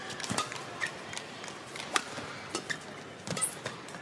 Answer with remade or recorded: recorded